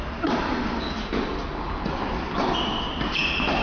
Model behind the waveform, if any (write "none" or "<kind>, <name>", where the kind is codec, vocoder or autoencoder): none